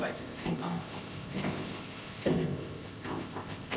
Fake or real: fake